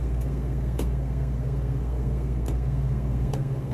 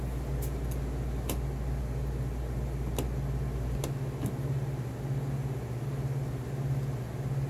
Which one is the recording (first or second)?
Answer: second